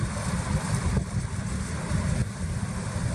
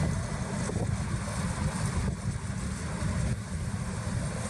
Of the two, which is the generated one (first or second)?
first